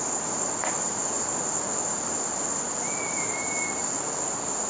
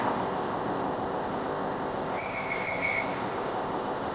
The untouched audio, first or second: first